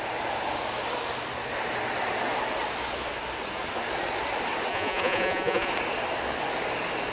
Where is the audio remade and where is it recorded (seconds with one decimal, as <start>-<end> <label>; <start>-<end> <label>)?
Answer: 0.0-4.7 recorded; 4.7-5.7 remade; 5.7-7.1 recorded